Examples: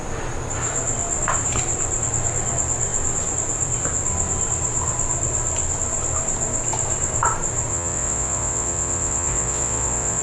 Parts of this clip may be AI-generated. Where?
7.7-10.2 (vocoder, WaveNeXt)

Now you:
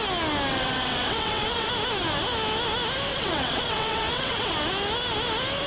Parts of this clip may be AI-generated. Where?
0.5-1.7 (vocoder, WaveNeXt); 3.1-4.5

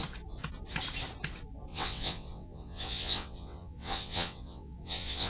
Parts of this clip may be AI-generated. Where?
1.7-5.3 (vocoder, WaveNeXt)

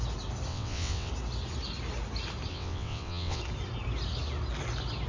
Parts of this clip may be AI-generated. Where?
0.5-1.1 (vocoder, WaveNeXt); 2.5-3.4

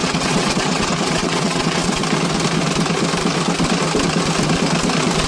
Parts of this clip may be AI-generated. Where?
0.0-2.0 (vocoder, WaveNeXt)

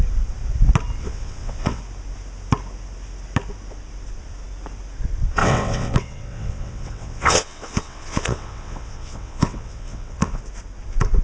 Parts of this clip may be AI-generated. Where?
1.0-1.8 (vocoder, WaveNeXt); 5.4-10.4

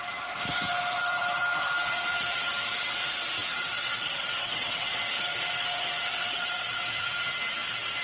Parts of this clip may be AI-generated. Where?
3.4-5.0 (vocoder, WaveNeXt); 6.1-6.8